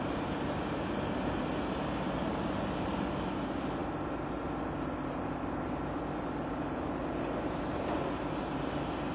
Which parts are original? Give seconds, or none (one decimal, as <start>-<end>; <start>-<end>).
0.0-9.1